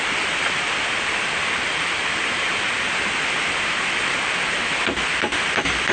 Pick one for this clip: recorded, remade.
recorded